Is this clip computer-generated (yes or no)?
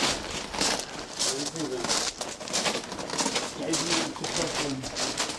no